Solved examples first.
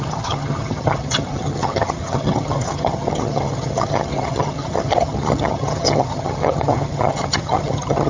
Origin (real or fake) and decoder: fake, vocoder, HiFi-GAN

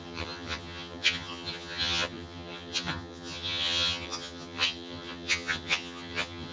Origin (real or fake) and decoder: fake, vocoder, HiFi-GAN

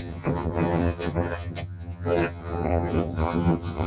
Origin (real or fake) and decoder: fake, vocoder, HiFi-GAN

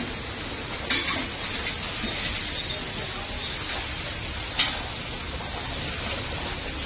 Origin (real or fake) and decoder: real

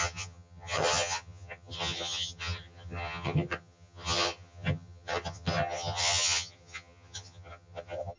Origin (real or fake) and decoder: fake, vocoder, HiFi-GAN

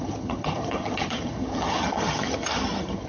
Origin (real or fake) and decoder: fake, vocoder, HiFi-GAN